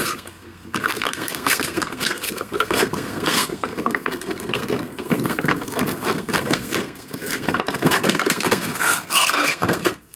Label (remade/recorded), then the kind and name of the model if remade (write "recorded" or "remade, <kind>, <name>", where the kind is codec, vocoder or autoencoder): remade, codec, SNAC